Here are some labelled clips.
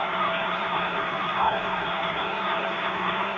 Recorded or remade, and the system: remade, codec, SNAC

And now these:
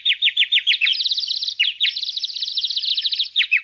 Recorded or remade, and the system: recorded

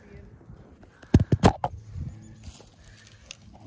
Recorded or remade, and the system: recorded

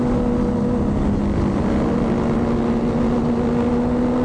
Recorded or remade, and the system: recorded